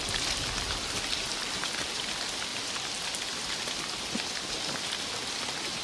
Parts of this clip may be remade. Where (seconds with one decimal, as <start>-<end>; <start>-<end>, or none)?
none